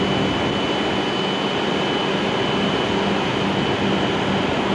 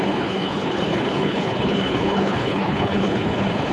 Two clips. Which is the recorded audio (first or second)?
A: first